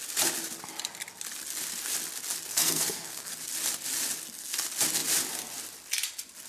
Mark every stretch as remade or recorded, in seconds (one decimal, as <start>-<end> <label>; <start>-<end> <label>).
0.0-2.5 recorded; 2.5-3.3 remade; 3.3-6.5 recorded